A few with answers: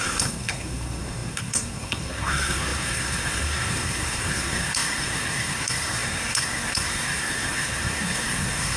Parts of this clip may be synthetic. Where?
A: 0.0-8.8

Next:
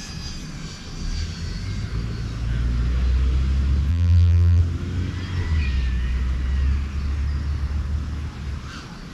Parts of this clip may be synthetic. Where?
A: 3.9-4.6

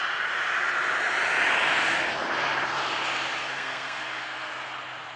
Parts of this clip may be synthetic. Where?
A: 3.4-4.5

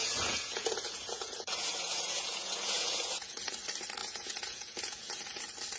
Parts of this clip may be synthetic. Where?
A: 0.0-3.5; 4.0-5.2

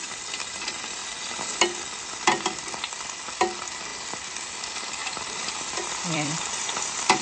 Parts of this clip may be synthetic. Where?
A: 5.0-7.2

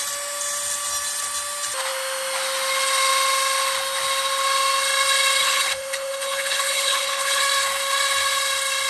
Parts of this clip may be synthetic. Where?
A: 5.4-7.4